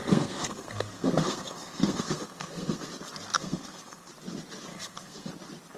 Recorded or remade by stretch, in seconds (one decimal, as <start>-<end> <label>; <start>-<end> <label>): 0.0-2.9 remade; 2.9-3.3 recorded; 3.3-4.1 remade; 4.1-4.7 recorded; 4.7-5.3 remade; 5.3-5.8 recorded

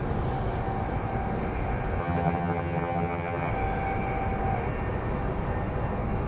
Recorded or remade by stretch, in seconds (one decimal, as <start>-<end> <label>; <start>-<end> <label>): 0.0-2.0 recorded; 2.0-3.5 remade; 3.5-6.3 recorded

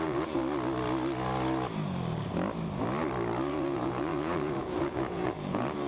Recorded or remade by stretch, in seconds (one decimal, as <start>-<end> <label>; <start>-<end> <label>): 0.0-0.4 remade; 0.4-3.5 recorded; 3.5-5.9 remade